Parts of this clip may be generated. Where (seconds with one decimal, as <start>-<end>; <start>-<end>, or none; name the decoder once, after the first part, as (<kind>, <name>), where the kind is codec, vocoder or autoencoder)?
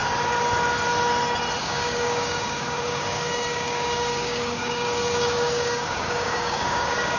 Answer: 1.6-7.2 (codec, DAC)